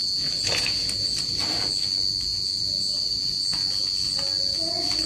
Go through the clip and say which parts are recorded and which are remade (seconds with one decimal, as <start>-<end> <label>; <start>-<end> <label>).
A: 0.0-5.1 recorded